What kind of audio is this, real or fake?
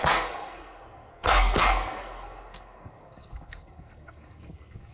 fake